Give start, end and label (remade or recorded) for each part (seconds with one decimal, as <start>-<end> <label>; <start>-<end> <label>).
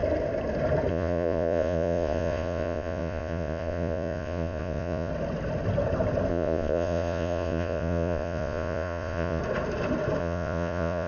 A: 0.0-0.9 recorded; 0.9-5.1 remade; 5.1-6.3 recorded; 6.3-9.4 remade; 9.4-10.2 recorded; 10.2-11.1 remade